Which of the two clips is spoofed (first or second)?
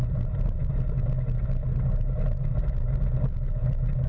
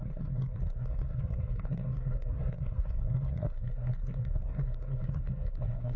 second